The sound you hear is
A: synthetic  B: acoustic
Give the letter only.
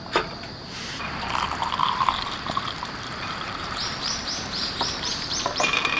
A